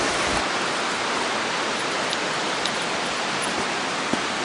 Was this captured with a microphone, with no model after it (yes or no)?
yes